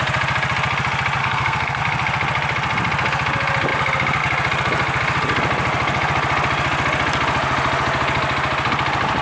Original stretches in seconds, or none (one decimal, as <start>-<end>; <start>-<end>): 0.0-1.2; 1.8-9.2